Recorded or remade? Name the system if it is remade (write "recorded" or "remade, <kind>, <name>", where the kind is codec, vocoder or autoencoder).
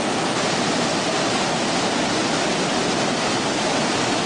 recorded